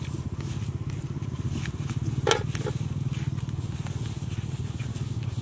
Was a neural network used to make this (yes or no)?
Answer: no